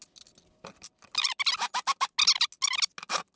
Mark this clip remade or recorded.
recorded